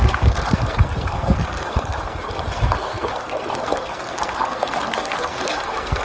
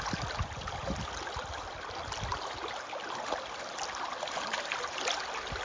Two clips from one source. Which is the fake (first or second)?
first